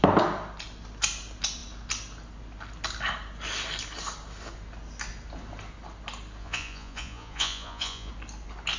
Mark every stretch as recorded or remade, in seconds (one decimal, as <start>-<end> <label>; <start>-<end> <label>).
0.0-6.4 recorded; 6.4-8.1 remade; 8.1-8.8 recorded